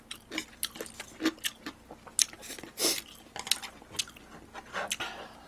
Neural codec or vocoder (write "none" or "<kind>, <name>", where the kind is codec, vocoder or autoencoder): none